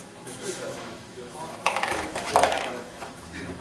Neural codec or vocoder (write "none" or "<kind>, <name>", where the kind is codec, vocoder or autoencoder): autoencoder, DAC-VAE